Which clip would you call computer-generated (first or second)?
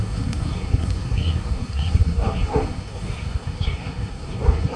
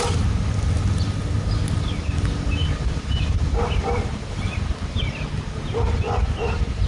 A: first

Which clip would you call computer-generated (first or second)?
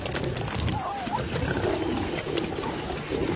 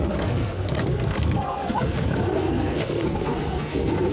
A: second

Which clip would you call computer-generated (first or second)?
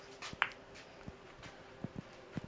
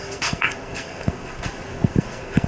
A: second